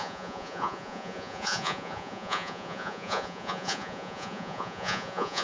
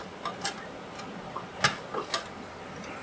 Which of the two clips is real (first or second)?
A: second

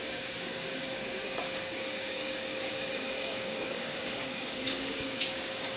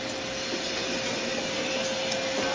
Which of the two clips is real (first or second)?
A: second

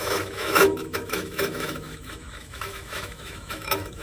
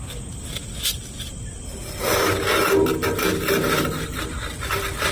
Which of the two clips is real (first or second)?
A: second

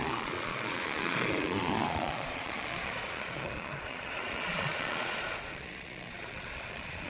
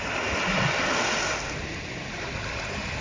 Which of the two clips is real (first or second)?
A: second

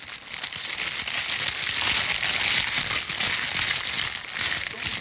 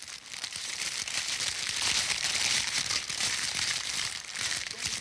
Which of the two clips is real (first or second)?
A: first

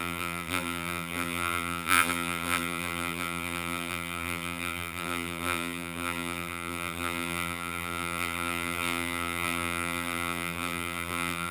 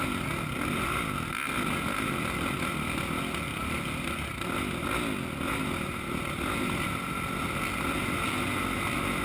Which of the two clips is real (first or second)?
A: second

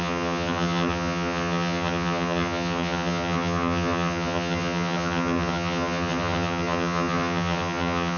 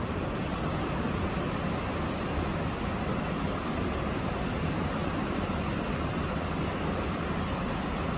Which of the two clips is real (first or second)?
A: second